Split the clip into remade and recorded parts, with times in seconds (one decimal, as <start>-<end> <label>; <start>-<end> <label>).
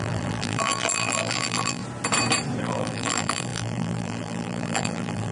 0.0-1.8 remade; 1.8-2.6 recorded; 2.6-5.3 remade